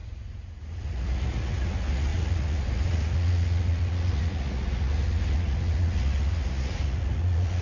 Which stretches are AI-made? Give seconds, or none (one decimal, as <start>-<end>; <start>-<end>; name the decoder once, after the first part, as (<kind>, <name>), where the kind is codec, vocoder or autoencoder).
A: 0.0-7.6 (vocoder, Vocos)